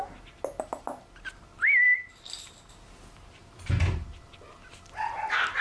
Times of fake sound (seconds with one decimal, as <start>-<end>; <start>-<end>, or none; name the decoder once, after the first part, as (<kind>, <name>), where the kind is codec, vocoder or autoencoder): none